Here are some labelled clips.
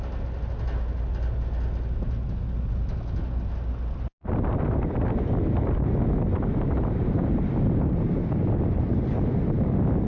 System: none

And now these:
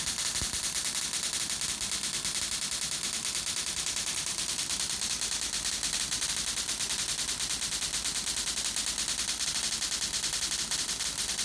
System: none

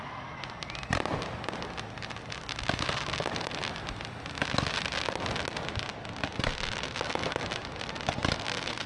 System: none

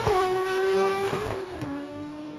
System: codec, DAC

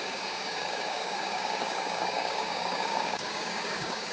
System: codec, DAC